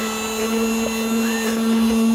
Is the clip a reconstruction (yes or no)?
no